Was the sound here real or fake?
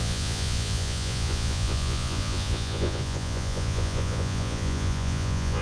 fake